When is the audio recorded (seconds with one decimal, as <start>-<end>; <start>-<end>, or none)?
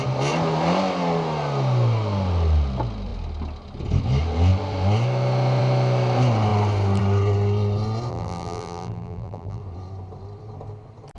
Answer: 0.0-8.1; 9.6-11.2